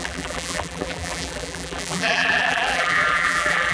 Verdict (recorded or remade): remade